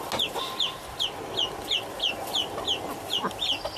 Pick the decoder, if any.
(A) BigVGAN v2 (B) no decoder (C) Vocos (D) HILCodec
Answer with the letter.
B